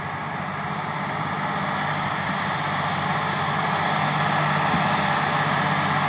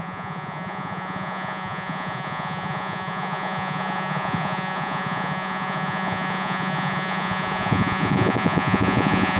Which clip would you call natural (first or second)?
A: first